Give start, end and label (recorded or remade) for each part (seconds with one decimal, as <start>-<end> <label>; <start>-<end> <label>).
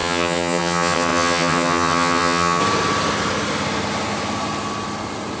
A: 0.0-2.6 remade; 2.6-5.4 recorded